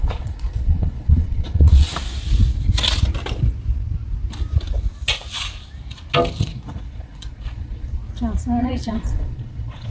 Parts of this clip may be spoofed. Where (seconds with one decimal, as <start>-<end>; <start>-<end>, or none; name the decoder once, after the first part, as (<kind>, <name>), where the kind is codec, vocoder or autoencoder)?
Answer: 0.0-1.9 (vocoder, Vocos); 6.4-8.0; 8.6-9.9